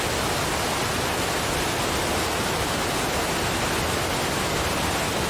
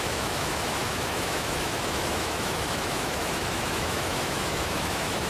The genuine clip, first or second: first